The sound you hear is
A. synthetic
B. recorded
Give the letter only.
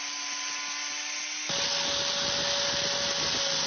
B